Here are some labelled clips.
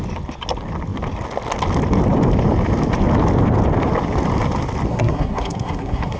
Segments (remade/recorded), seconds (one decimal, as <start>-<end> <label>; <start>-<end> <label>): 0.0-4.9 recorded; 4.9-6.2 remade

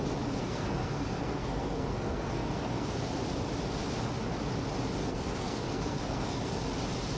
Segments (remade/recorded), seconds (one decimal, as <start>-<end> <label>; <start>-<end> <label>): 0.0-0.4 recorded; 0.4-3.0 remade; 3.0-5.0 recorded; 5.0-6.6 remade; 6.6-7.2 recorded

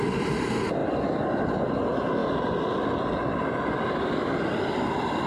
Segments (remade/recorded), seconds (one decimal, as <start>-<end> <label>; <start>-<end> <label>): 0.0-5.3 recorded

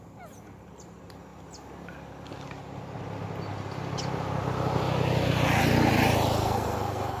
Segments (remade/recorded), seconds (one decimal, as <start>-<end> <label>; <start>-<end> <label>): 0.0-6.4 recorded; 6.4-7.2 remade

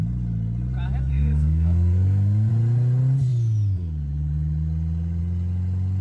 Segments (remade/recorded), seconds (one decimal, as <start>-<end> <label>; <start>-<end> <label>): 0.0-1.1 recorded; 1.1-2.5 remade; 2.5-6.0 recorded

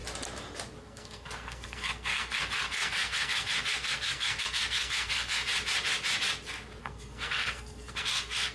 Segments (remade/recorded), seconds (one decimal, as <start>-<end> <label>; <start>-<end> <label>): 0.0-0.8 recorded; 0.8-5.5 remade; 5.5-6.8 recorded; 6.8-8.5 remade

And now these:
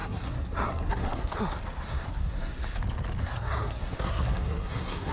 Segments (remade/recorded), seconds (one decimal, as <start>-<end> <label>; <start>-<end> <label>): 0.0-1.3 remade; 1.3-1.9 recorded; 1.9-2.6 remade; 2.6-3.2 recorded; 3.2-5.1 remade

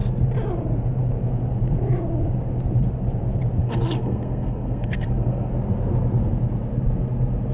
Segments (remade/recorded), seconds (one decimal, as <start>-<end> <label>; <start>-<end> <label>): 0.0-3.6 recorded; 3.6-5.5 remade; 5.5-7.5 recorded